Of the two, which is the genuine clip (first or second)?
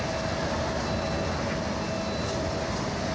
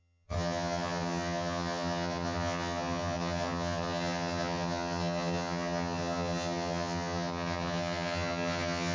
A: first